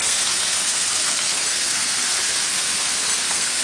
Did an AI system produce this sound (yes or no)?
yes